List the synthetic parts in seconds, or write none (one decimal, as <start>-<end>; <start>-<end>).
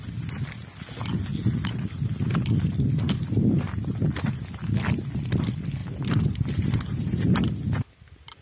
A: none